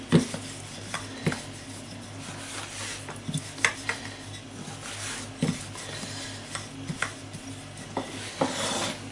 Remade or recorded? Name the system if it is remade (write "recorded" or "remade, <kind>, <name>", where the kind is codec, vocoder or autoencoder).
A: recorded